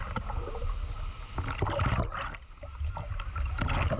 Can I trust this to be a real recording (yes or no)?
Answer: yes